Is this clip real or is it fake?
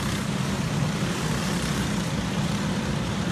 real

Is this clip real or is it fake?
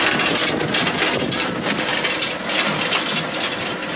real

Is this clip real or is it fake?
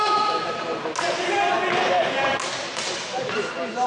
real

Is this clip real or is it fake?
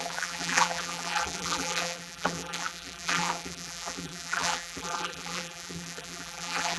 fake